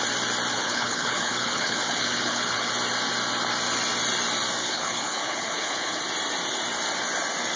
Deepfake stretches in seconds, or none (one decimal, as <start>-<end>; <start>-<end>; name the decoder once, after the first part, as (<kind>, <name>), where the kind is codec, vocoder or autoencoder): 0.5-2.7 (codec, HILCodec); 4.6-6.0